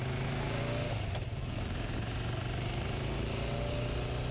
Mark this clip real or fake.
real